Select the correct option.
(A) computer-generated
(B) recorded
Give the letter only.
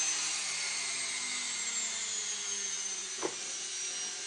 B